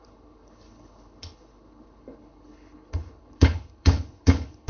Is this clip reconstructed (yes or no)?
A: yes